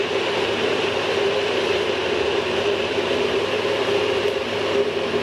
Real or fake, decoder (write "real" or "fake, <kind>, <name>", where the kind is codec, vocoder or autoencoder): fake, vocoder, BigVGAN v2